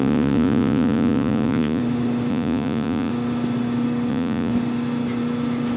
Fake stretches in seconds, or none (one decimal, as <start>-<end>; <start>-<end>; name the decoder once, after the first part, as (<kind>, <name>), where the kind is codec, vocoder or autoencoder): 0.0-1.8 (vocoder, Vocos); 2.3-3.1; 4.1-4.5